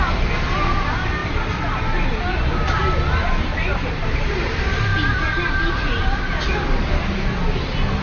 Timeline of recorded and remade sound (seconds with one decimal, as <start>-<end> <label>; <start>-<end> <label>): 0.0-8.0 recorded